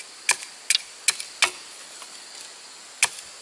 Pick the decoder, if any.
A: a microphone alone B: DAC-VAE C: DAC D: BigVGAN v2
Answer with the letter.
A